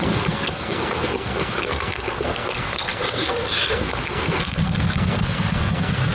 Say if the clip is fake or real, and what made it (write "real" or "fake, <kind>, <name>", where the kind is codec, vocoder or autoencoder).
fake, codec, SNAC